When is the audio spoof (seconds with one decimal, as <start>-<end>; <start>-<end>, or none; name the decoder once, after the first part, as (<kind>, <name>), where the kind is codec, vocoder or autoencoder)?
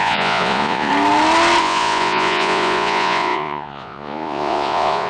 0.0-0.9 (vocoder, Vocos); 1.6-5.1